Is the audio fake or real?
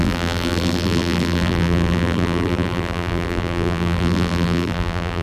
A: fake